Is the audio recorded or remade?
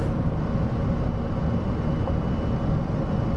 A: recorded